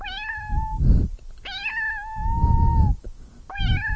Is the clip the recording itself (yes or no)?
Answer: yes